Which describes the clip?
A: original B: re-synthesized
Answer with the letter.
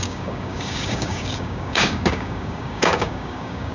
B